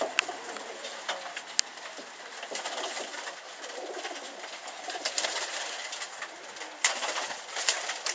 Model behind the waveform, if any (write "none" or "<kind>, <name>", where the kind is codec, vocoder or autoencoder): none